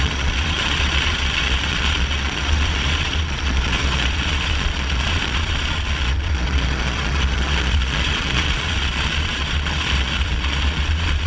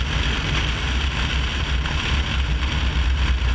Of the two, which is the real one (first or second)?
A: second